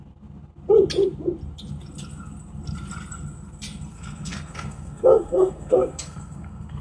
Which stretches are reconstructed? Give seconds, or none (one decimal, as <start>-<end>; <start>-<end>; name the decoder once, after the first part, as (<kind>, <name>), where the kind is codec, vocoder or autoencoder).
3.9-6.8 (codec, SNAC)